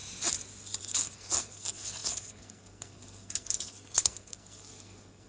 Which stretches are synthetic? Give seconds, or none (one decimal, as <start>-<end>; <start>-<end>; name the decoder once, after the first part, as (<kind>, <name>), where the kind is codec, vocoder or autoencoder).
0.8-5.3 (codec, SNAC)